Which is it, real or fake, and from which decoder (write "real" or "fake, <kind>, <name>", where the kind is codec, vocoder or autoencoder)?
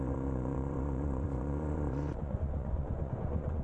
fake, vocoder, Vocos